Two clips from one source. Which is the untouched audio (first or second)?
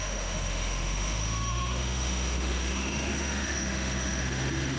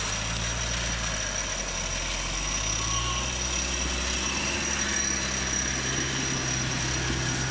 second